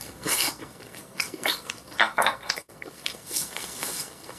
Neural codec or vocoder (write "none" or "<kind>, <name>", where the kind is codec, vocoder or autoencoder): codec, SNAC